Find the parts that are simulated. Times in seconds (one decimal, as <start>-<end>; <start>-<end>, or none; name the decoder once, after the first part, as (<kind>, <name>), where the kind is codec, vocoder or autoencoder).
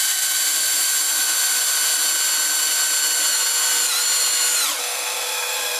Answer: 4.8-5.8 (codec, SNAC)